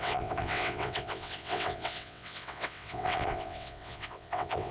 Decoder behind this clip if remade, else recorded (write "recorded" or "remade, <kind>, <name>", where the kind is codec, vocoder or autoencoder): remade, vocoder, WaveNeXt